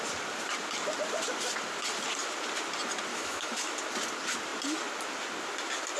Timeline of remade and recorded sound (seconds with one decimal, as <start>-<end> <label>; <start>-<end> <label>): 0.0-3.1 recorded; 3.1-3.7 remade; 3.7-6.0 recorded